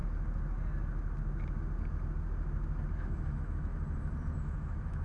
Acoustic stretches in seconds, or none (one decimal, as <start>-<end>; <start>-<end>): 0.0-3.0; 3.7-4.4